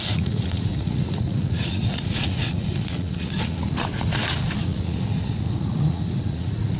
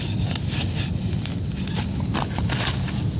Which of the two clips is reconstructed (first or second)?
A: first